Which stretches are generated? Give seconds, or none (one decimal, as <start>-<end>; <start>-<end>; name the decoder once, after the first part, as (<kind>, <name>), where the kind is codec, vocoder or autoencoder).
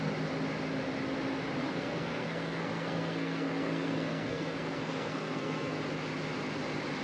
1.6-5.8 (codec, SNAC)